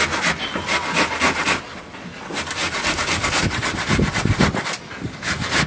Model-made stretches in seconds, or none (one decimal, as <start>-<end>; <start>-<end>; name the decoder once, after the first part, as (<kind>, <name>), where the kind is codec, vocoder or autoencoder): none